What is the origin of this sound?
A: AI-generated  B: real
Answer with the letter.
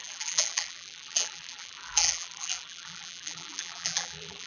A